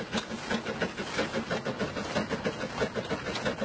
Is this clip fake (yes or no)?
no